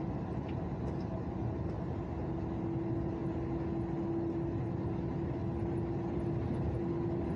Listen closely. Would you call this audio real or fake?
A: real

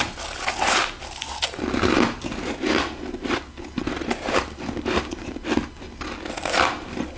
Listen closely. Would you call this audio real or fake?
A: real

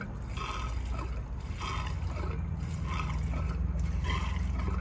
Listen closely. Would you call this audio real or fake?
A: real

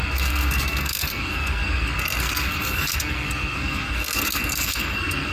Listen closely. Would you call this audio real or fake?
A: fake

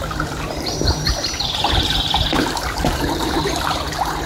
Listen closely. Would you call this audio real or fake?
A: fake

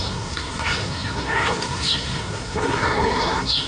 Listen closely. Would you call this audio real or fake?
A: fake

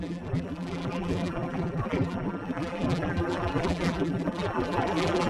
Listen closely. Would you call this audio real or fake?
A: fake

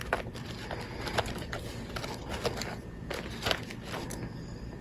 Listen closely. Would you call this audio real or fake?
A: real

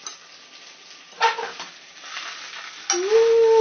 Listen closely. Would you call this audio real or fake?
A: real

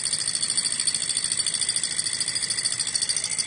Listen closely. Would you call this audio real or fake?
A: real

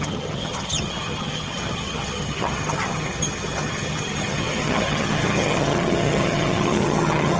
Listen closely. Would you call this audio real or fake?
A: fake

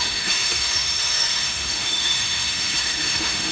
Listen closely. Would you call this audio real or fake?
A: fake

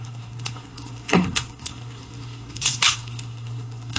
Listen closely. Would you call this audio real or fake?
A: fake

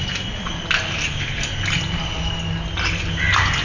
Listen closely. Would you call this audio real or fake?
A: real